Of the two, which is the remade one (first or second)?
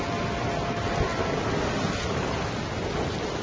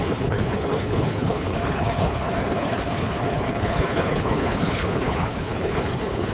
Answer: second